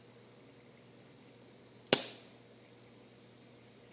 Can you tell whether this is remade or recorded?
recorded